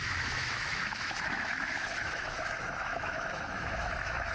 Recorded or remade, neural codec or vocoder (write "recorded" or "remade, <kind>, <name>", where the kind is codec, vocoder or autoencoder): remade, autoencoder, DAC-VAE